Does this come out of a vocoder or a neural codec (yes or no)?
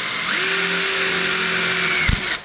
no